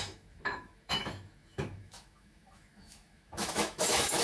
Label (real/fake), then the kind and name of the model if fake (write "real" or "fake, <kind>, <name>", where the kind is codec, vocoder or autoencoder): fake, autoencoder, DAC-VAE